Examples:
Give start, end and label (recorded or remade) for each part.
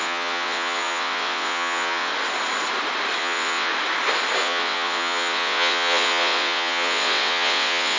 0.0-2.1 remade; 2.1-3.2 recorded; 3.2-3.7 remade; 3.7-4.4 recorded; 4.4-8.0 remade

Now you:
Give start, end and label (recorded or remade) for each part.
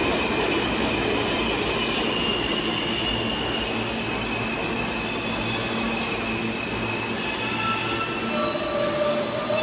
0.0-9.6 recorded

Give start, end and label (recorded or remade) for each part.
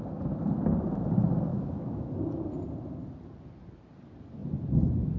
0.0-1.5 recorded; 1.5-2.1 remade; 2.1-5.2 recorded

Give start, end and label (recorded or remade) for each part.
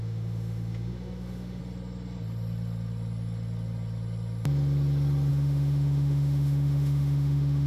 0.0-1.6 remade; 1.6-5.3 recorded; 5.3-7.7 remade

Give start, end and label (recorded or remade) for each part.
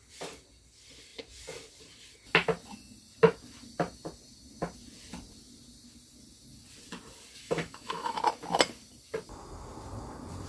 0.0-7.4 recorded; 7.4-8.2 remade; 8.2-10.5 recorded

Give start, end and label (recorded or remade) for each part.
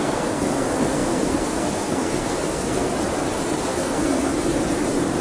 0.0-2.9 remade; 2.9-3.7 recorded; 3.7-4.3 remade; 4.3-5.2 recorded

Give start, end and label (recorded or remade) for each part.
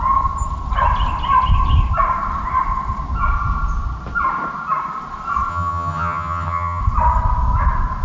0.0-5.5 recorded; 5.5-6.8 remade; 6.8-8.0 recorded